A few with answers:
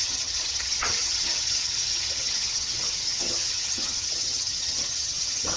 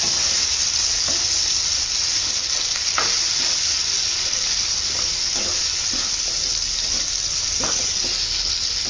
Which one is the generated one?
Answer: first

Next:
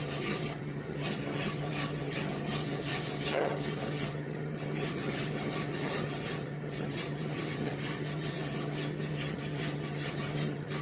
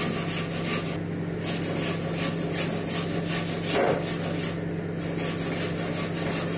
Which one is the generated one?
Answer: first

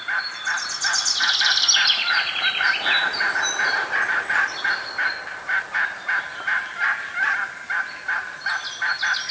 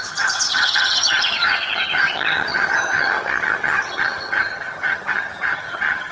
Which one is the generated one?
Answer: second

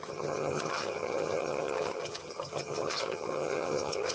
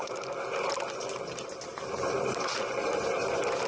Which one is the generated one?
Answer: first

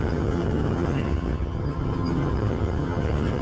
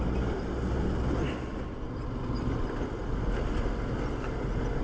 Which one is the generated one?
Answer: first